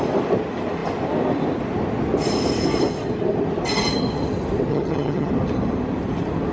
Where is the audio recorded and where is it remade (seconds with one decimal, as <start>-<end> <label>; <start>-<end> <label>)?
0.0-4.7 recorded; 4.7-5.3 remade; 5.3-6.5 recorded